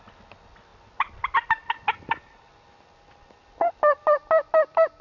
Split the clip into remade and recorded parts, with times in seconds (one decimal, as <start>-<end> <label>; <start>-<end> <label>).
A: 0.0-5.0 recorded